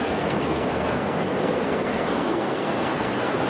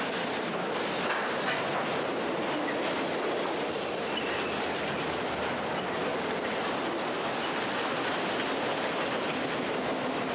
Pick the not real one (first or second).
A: first